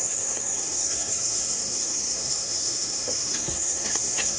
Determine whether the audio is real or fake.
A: fake